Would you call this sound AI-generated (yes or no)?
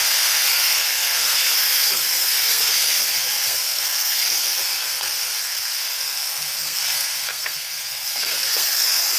yes